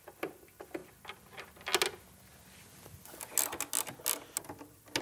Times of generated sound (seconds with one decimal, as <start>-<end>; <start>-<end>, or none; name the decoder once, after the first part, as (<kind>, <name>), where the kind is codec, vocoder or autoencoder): none